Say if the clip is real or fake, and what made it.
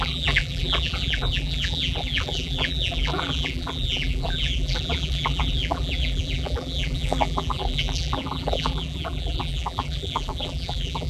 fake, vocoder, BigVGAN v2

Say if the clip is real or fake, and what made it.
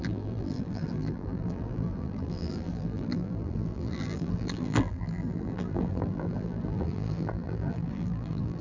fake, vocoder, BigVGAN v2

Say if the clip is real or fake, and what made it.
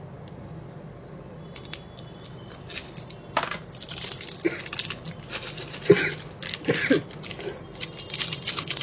real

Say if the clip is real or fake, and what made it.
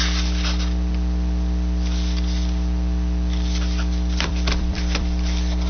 fake, vocoder, BigVGAN v2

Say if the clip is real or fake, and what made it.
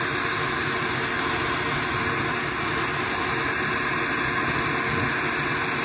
real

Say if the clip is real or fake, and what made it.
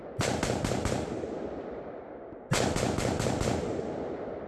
real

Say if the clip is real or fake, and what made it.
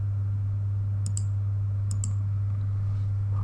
real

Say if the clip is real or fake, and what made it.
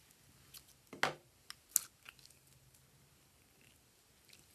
real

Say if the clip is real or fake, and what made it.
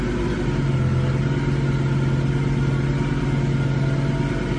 real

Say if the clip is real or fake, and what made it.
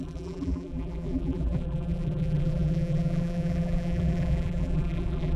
fake, vocoder, BigVGAN v2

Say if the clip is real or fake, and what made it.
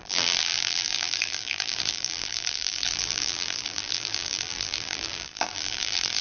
fake, vocoder, BigVGAN v2